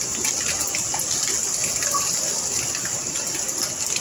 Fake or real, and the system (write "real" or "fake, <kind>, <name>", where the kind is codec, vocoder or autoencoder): real